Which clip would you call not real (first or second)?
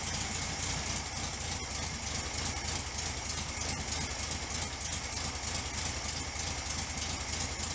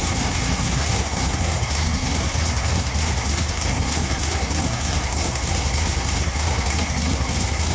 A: second